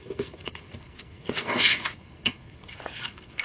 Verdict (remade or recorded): remade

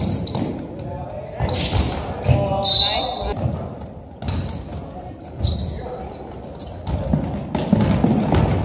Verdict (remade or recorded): recorded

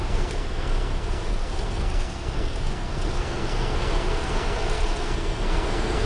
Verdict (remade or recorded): remade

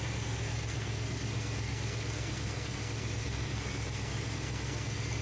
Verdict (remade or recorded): remade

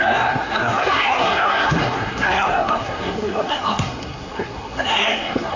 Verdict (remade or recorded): remade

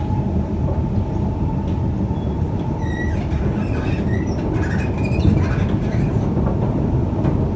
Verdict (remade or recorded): recorded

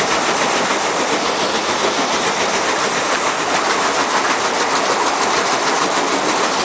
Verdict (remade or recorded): recorded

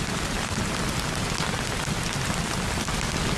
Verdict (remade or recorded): recorded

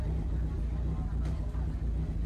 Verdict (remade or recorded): recorded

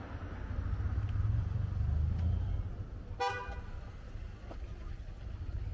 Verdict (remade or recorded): recorded